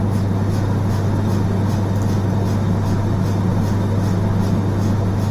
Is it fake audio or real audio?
real